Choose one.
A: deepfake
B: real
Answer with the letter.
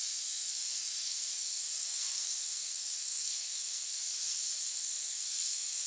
A